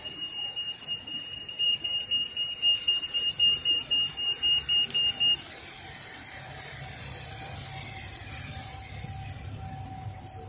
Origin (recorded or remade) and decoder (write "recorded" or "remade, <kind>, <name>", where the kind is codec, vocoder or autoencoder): remade, vocoder, BigVGAN v2